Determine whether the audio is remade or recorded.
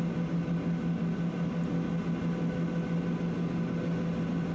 recorded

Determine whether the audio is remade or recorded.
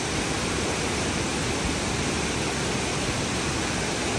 recorded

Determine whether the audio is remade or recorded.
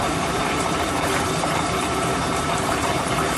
remade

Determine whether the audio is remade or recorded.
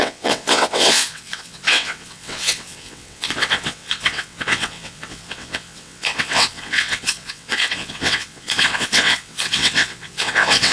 remade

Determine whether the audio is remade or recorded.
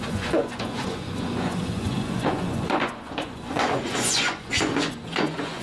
remade